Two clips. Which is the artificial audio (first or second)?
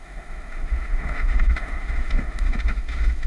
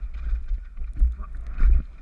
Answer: first